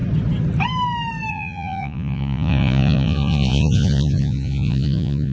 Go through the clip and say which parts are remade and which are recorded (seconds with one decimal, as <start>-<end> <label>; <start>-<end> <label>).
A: 0.0-1.3 recorded; 1.3-5.3 remade